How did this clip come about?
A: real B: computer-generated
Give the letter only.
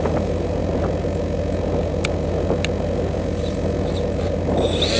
A